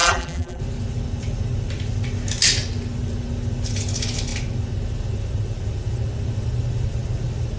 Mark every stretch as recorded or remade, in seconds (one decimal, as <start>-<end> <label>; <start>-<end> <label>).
0.0-0.6 remade; 0.6-7.6 recorded